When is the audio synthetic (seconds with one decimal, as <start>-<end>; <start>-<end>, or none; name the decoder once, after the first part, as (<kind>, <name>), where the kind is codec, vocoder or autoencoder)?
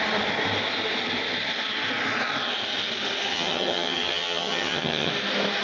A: 3.3-5.1 (vocoder, HiFi-GAN)